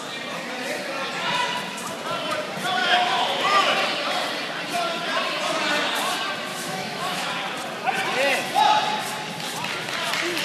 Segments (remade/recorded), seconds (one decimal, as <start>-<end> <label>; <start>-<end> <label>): 0.0-2.8 recorded; 2.8-3.4 remade; 3.4-6.5 recorded; 6.5-7.3 remade; 7.3-10.4 recorded